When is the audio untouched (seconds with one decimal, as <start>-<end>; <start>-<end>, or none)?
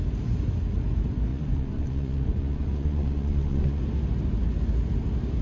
0.0-1.3; 3.8-5.4